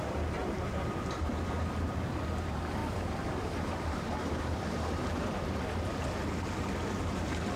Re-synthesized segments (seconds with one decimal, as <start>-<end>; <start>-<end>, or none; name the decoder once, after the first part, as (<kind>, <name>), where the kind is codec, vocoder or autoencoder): 0.4-1.6 (vocoder, BigVGAN v2); 2.8-5.6